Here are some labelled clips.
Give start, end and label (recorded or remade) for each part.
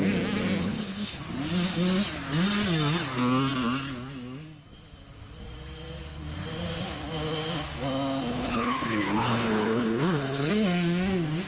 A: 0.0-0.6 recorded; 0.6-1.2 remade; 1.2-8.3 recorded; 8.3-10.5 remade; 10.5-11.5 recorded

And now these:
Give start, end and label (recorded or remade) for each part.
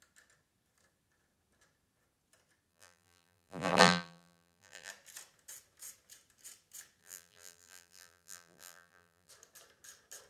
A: 0.0-2.7 recorded; 2.7-4.9 remade; 4.9-7.0 recorded; 7.0-9.3 remade; 9.3-10.3 recorded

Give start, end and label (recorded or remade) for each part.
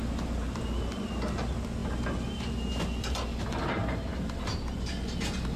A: 0.0-5.6 recorded